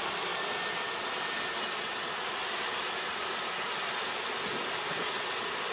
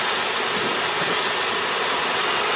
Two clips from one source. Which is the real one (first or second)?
second